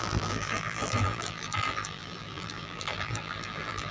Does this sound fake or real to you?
fake